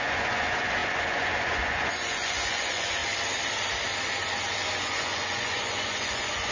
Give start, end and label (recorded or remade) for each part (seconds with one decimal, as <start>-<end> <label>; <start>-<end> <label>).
0.0-3.0 remade; 3.0-4.8 recorded; 4.8-6.5 remade